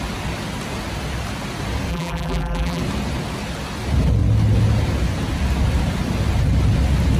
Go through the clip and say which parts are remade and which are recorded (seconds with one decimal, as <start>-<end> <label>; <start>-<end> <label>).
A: 0.0-1.9 recorded; 1.9-2.8 remade; 2.8-7.2 recorded